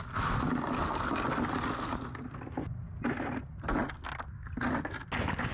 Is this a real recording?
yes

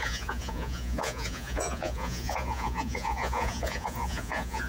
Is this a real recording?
no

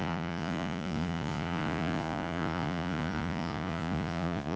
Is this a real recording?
no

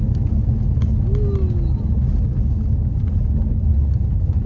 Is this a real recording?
yes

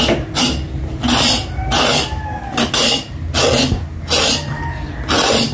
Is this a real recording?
yes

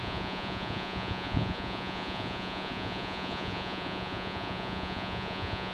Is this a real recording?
no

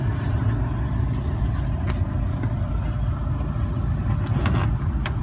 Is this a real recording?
yes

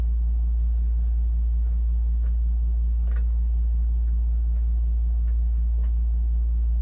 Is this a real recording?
yes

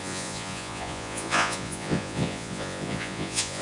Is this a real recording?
no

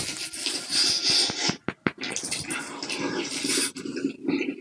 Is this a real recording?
yes